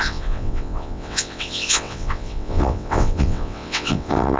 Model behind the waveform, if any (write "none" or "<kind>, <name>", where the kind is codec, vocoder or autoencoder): vocoder, WaveNeXt